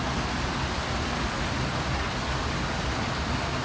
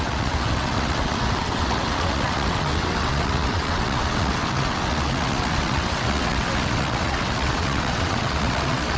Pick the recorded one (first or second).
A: first